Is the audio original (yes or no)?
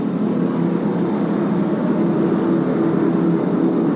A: yes